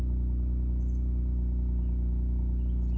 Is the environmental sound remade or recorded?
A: recorded